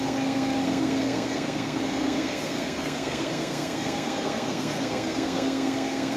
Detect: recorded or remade remade